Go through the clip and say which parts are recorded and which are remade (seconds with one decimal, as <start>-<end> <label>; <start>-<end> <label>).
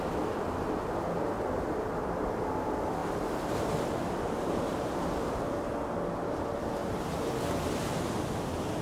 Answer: 0.0-2.0 recorded; 2.0-2.6 remade; 2.6-3.0 recorded; 3.0-5.0 remade; 5.0-6.8 recorded; 6.8-7.3 remade; 7.3-8.8 recorded